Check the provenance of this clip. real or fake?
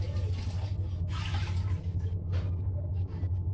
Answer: real